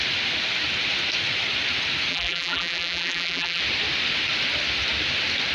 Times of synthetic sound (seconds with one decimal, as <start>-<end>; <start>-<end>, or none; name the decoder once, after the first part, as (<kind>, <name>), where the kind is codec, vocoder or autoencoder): 2.1-3.6 (vocoder, BigVGAN v2)